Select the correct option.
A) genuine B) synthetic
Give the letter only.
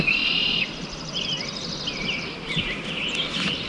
A